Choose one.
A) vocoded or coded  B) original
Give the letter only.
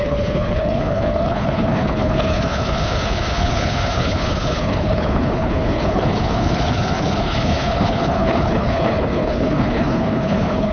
A